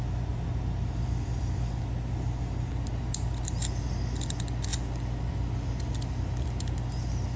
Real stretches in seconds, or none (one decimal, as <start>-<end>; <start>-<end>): 0.0-7.4